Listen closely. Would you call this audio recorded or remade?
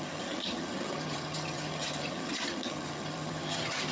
remade